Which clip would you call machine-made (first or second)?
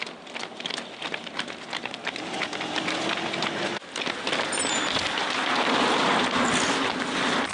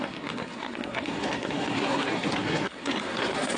second